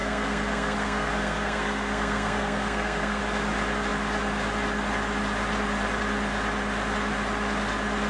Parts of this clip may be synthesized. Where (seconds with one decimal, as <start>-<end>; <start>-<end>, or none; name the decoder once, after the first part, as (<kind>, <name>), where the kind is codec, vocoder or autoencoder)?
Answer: 0.0-3.2 (codec, SNAC)